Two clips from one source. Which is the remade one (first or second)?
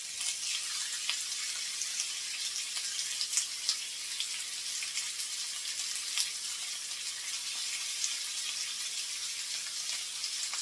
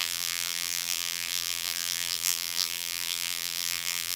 second